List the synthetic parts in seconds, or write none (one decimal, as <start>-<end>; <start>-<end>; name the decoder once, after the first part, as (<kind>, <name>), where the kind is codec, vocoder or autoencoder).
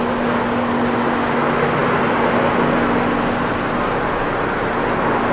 none